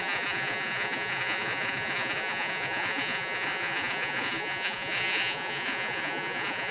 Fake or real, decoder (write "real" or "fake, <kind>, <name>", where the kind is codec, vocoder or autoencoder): fake, vocoder, Vocos